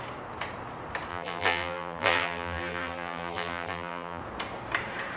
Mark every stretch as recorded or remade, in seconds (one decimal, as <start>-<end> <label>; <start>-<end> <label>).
0.0-1.1 recorded; 1.1-4.2 remade; 4.2-5.2 recorded